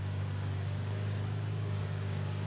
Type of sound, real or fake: fake